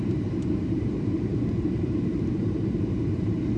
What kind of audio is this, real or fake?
fake